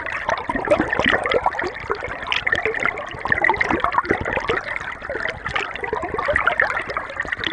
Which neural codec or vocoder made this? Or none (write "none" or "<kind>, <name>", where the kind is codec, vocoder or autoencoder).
none